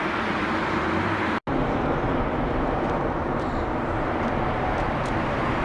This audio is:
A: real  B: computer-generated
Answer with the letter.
A